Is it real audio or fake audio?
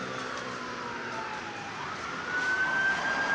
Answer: real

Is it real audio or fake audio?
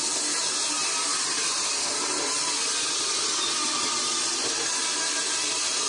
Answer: real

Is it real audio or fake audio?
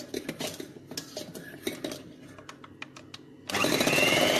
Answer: real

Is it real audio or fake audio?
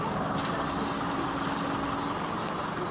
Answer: real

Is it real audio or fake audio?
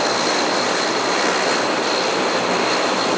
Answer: real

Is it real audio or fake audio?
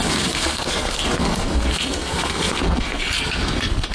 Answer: fake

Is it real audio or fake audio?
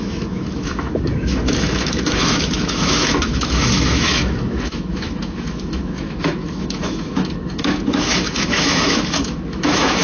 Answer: fake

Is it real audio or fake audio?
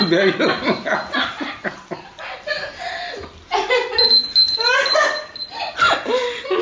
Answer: real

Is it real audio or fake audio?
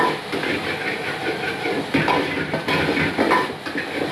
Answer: real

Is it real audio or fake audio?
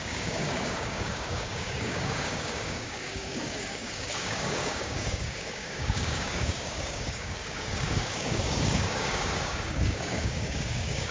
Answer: fake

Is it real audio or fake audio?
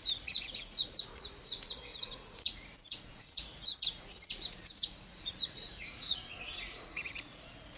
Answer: fake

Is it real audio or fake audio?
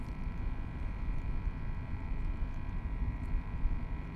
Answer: fake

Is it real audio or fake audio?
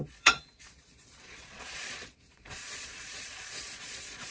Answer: fake